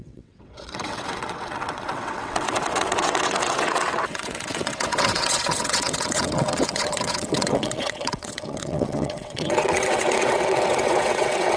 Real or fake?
fake